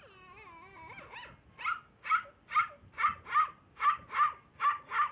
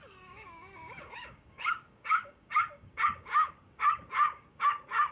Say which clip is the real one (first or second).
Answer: first